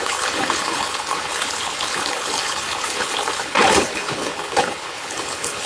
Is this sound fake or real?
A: fake